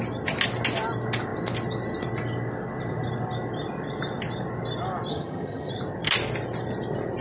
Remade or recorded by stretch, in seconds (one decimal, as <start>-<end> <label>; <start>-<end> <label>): 0.0-5.1 recorded; 5.1-5.7 remade; 5.7-7.2 recorded